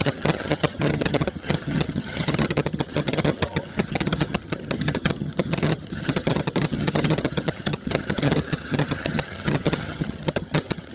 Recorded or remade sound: remade